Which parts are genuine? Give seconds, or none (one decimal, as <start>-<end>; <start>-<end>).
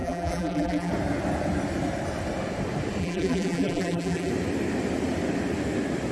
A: 0.9-3.0; 4.3-6.1